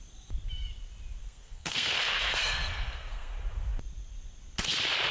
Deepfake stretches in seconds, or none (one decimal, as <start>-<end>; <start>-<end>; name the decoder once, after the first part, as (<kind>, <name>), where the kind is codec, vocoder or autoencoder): 1.2-3.3 (codec, SNAC)